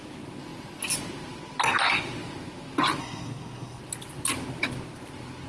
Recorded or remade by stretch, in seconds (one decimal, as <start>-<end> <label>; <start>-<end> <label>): 0.0-3.0 recorded; 3.0-3.8 remade; 3.8-5.5 recorded